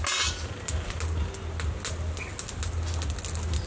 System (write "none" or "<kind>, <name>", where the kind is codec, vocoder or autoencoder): none